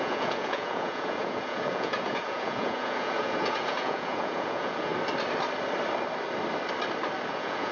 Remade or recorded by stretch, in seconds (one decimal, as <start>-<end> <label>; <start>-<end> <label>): 0.0-4.9 remade; 4.9-7.3 recorded; 7.3-7.7 remade